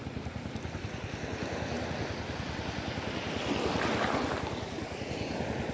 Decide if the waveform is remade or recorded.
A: recorded